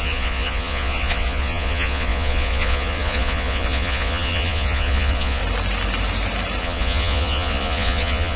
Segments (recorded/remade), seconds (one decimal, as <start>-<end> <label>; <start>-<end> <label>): 0.0-5.4 remade; 5.4-6.6 recorded; 6.6-8.4 remade